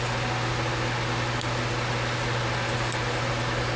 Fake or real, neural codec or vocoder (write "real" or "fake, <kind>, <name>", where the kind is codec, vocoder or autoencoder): real